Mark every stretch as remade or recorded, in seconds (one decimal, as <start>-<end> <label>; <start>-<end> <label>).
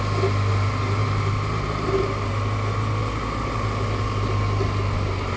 0.0-5.4 remade